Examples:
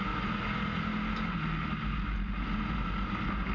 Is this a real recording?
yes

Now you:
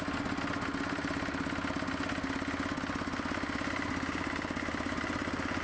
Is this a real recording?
yes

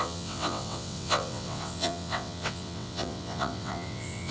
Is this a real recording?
no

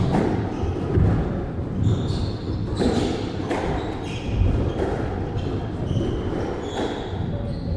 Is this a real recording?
yes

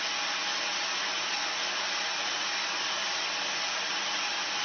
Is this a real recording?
yes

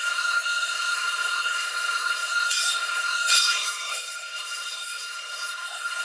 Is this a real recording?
no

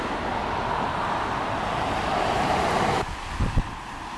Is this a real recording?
yes